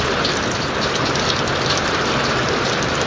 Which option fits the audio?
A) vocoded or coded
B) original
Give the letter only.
B